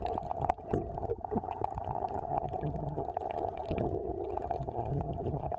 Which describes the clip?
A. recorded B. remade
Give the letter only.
B